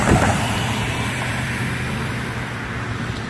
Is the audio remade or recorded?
remade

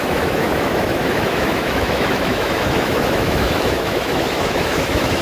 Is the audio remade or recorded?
remade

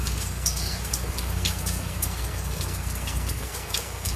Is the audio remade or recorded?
remade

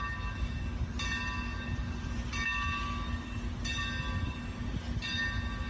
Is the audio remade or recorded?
recorded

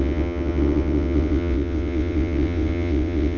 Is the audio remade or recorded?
remade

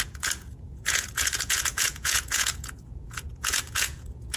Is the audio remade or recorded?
remade